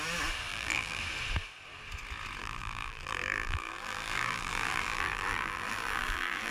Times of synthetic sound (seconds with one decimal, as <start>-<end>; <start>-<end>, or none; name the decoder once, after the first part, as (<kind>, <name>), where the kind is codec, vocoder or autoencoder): 0.5-1.0 (vocoder, BigVGAN v2); 2.4-6.5